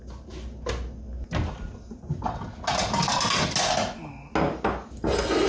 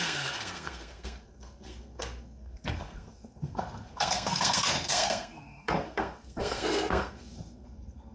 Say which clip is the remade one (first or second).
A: second